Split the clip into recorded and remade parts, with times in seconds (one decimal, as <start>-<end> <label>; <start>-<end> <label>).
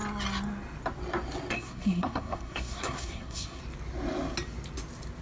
0.0-1.5 recorded; 1.5-3.6 remade; 3.6-5.2 recorded